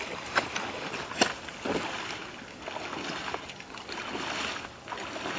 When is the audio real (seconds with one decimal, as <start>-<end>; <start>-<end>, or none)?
0.0-5.4